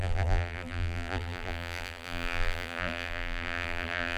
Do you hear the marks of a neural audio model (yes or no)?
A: yes